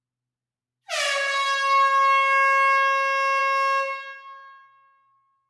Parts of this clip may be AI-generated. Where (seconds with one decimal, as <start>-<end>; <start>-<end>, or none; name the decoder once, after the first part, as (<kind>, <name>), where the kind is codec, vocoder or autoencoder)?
none

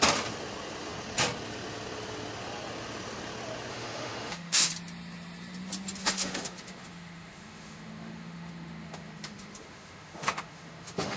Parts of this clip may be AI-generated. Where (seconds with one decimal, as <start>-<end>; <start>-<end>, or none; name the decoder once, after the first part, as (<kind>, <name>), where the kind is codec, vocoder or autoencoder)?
3.7-4.7 (autoencoder, DAC-VAE); 6.0-11.2